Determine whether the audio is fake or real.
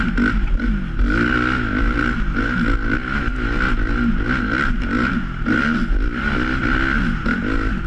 real